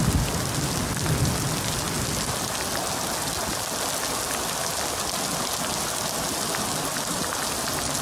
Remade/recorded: recorded